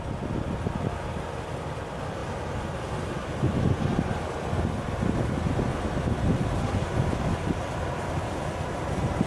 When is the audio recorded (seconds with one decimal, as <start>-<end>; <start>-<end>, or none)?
0.0-9.3